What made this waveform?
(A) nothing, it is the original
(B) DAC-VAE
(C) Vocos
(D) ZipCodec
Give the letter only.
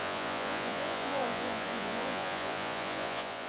C